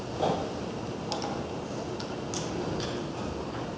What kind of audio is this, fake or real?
real